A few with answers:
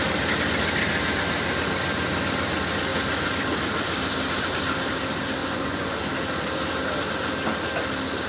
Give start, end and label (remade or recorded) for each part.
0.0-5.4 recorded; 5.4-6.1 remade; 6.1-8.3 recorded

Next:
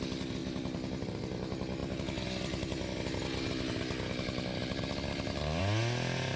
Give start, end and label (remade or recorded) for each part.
0.0-0.4 recorded; 0.4-1.2 remade; 1.2-6.4 recorded